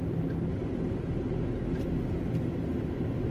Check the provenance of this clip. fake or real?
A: real